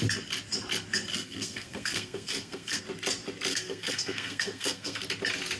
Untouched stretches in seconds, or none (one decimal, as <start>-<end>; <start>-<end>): 0.0-1.1; 2.8-3.5; 5.0-5.6